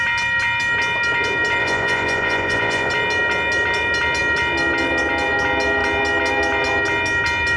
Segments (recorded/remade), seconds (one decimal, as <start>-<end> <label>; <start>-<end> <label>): 0.0-1.6 recorded; 1.6-2.9 remade; 2.9-7.6 recorded